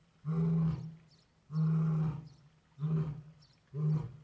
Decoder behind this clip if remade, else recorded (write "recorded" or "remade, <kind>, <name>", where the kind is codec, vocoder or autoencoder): recorded